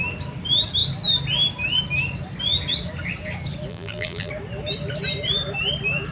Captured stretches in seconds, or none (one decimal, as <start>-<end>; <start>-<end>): 0.0-3.7; 4.3-6.1